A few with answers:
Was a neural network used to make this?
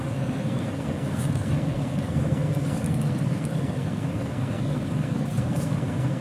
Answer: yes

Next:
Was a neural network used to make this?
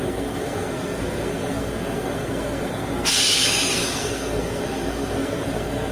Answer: yes